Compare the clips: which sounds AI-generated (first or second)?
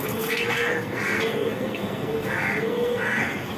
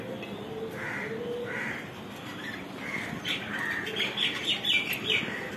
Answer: first